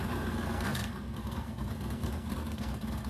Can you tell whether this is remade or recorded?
remade